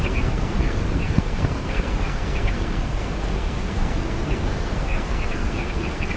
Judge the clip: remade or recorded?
remade